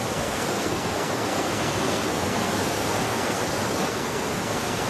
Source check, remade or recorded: remade